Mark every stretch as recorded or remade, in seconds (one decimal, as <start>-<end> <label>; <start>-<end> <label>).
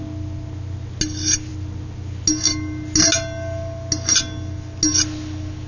0.0-5.7 recorded